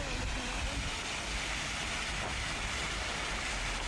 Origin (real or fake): real